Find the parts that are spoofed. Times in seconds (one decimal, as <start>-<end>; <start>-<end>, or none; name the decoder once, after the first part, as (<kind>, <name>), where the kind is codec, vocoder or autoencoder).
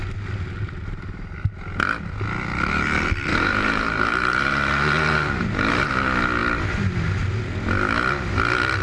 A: 3.3-5.9 (vocoder, BigVGAN v2)